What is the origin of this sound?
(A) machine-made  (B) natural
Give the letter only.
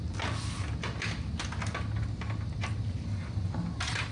B